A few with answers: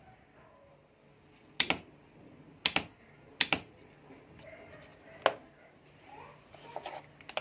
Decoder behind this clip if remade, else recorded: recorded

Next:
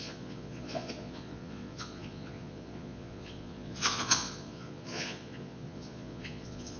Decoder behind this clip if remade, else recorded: remade, vocoder, Vocos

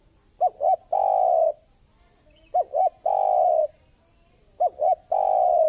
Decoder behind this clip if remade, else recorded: recorded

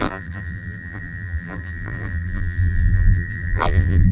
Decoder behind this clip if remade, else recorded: remade, vocoder, BigVGAN v2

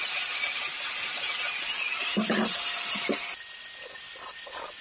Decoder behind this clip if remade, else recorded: recorded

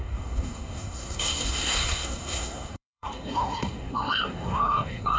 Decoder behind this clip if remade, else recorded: remade, codec, SNAC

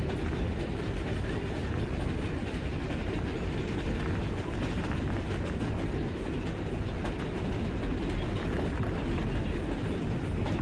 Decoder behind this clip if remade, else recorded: recorded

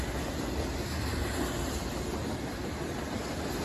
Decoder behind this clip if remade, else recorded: recorded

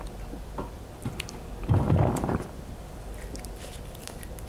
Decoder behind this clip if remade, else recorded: remade, vocoder, BigVGAN v2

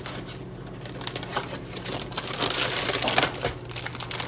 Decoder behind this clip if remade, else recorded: recorded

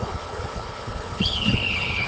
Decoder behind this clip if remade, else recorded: remade, codec, HILCodec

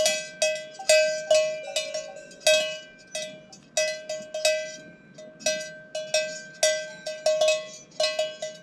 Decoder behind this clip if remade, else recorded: recorded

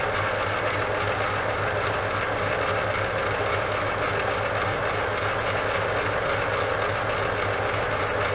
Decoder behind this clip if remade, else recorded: recorded